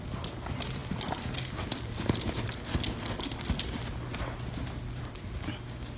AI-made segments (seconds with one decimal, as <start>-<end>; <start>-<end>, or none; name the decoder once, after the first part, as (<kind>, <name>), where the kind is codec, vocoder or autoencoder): none